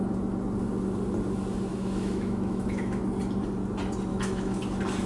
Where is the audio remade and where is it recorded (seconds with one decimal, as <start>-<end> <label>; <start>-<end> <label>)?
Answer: 0.0-1.7 recorded; 1.7-3.0 remade; 3.0-4.1 recorded; 4.1-4.6 remade; 4.6-5.1 recorded